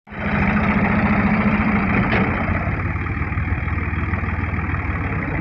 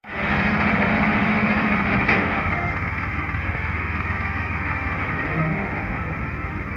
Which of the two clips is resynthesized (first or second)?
second